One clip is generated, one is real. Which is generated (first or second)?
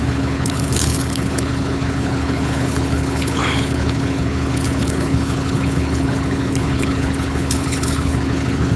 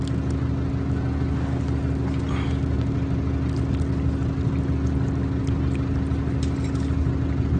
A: first